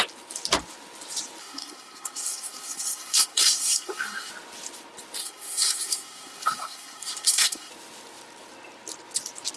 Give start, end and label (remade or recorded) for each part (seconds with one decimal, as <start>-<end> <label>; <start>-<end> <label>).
0.0-1.4 recorded; 1.4-4.3 remade; 4.3-5.2 recorded; 5.2-7.7 remade; 7.7-9.6 recorded